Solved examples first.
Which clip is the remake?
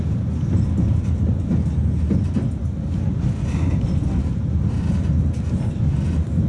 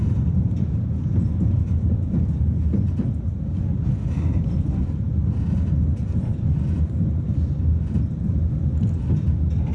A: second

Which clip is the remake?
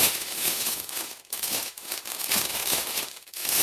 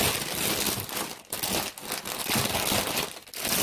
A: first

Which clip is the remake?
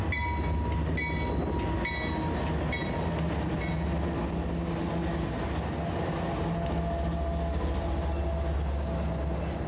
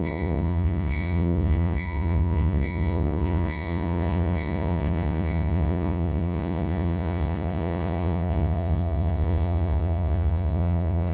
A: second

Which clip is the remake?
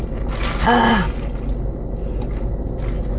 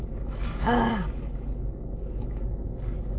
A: second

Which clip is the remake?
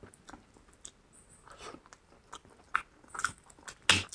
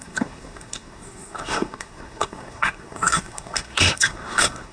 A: second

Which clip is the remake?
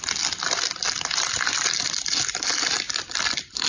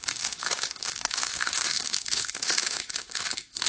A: second